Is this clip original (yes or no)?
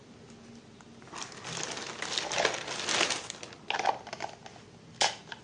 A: yes